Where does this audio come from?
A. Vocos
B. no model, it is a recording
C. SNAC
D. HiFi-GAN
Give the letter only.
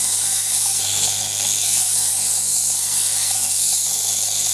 C